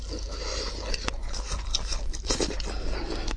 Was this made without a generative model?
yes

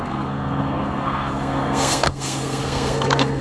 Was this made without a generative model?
no